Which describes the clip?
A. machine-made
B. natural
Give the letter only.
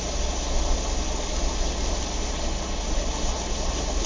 B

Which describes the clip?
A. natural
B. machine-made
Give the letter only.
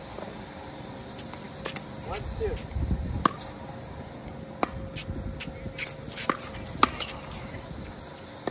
A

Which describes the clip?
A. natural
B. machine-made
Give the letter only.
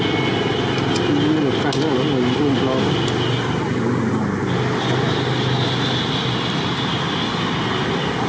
A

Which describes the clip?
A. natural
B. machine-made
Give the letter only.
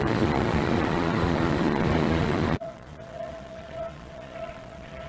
B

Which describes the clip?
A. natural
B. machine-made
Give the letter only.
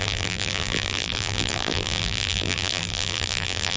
B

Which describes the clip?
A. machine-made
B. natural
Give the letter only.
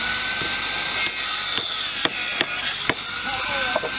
B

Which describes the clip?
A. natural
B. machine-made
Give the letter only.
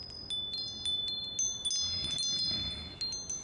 A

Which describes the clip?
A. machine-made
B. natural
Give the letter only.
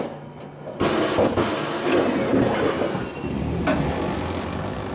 B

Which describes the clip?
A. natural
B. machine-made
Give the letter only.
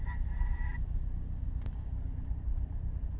B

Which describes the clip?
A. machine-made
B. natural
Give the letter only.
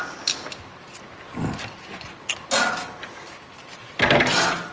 B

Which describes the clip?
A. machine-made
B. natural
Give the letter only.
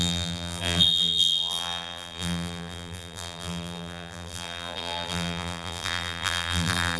A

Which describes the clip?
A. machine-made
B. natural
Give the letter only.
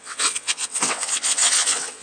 A